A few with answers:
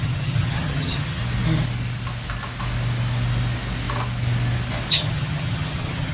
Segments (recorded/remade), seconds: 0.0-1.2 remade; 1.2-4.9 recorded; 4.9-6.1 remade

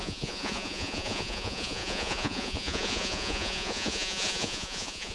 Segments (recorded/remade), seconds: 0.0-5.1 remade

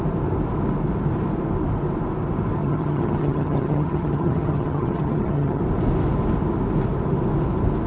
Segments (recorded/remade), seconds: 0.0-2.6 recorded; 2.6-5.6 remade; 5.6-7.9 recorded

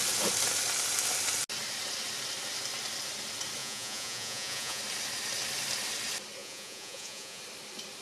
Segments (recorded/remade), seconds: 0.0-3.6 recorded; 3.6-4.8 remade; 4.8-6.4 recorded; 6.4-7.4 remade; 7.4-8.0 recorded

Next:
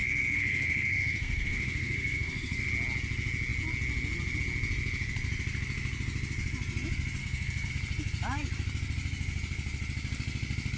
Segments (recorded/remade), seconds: 0.0-2.7 remade; 2.7-7.2 recorded; 7.2-7.7 remade; 7.7-10.8 recorded